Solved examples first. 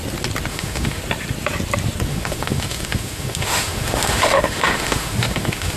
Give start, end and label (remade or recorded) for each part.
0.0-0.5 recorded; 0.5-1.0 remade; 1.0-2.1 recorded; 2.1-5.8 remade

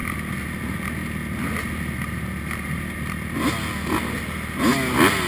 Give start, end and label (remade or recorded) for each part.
0.0-5.3 recorded

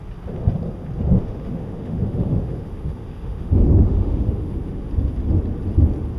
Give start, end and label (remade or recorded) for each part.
0.0-1.2 recorded; 1.2-4.9 remade; 4.9-6.2 recorded

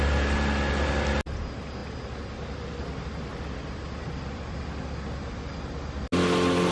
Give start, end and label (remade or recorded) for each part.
0.0-6.7 recorded

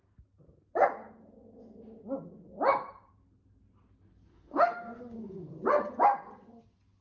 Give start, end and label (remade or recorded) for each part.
0.0-4.3 recorded; 4.3-5.5 remade; 5.5-7.0 recorded

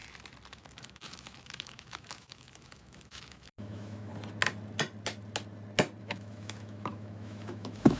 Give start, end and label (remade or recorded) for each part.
0.0-0.5 recorded; 0.5-4.1 remade; 4.1-6.0 recorded; 6.0-8.0 remade